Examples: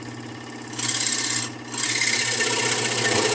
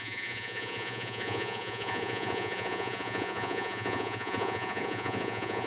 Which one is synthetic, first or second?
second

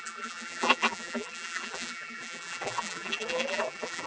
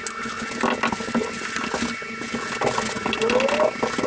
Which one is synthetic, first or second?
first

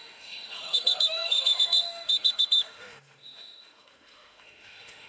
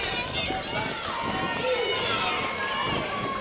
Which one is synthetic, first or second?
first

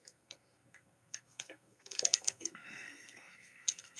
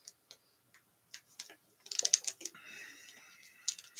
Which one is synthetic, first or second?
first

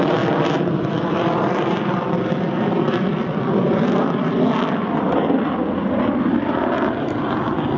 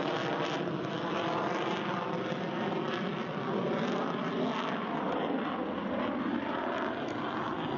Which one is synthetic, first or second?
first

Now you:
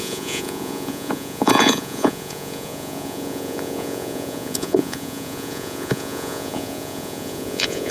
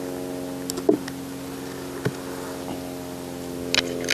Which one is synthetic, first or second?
first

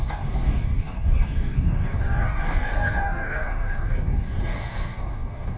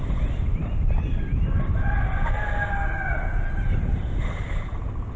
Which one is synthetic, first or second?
first